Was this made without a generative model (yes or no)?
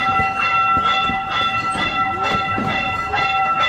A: yes